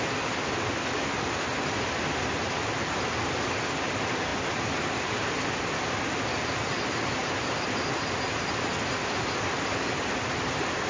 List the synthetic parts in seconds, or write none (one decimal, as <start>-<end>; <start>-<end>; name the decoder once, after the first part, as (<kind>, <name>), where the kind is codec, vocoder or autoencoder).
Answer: none